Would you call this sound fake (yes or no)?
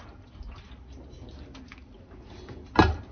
no